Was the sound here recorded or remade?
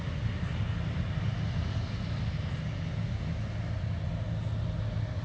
recorded